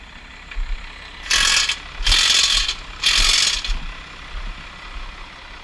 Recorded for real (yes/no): yes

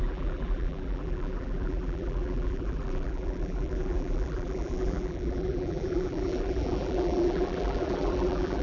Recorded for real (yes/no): no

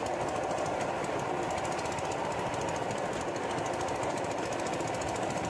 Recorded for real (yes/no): yes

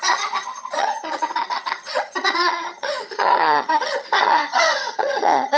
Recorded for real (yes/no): no